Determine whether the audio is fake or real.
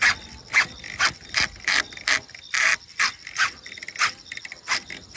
real